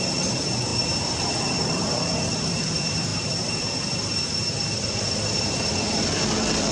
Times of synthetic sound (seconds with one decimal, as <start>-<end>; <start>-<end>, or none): 0.0-6.7